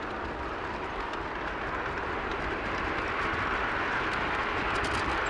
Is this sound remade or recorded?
recorded